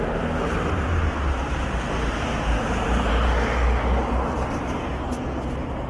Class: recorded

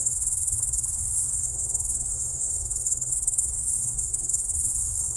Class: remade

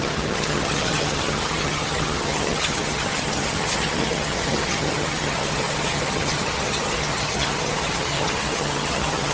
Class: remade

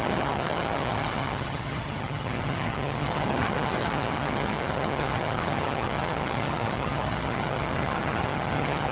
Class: remade